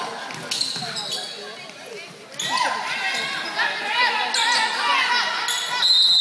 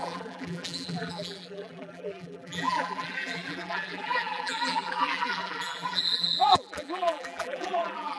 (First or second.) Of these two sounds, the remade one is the second